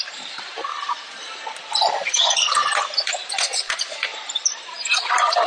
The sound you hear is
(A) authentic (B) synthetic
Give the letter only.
B